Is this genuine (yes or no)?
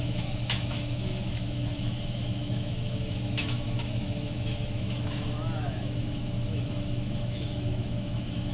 no